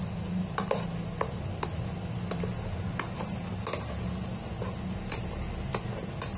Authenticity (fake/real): real